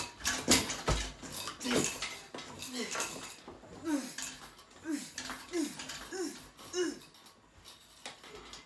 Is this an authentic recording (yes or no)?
yes